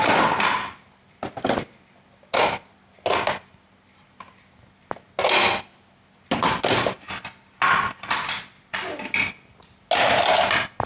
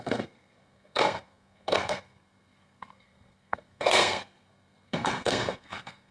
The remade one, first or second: second